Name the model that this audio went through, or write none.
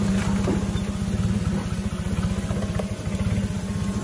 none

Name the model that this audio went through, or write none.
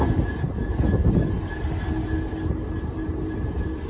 none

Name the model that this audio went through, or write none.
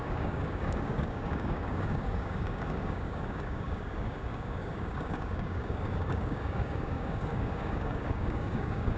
codec, DAC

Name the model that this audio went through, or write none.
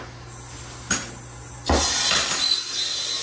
none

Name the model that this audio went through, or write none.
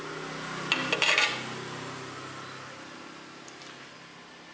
none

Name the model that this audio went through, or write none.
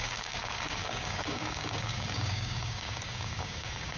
codec, DAC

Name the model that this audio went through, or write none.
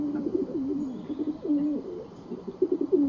none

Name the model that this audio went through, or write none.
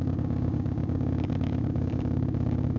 codec, DAC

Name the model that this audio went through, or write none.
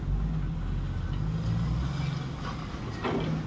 none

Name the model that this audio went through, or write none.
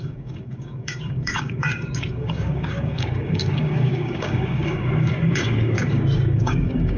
codec, DAC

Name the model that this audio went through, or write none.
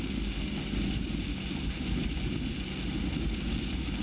none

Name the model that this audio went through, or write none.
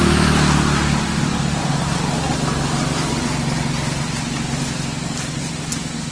none